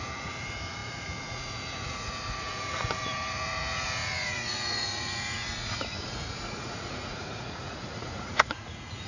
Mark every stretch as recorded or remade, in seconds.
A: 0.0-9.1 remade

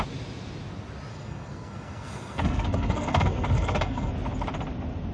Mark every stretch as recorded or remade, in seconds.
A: 0.0-1.1 recorded; 1.1-4.1 remade; 4.1-5.1 recorded

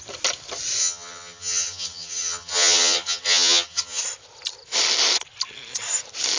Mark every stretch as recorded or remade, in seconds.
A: 0.0-0.8 recorded; 0.8-4.0 remade; 4.0-6.4 recorded